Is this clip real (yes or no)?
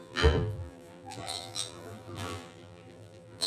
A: no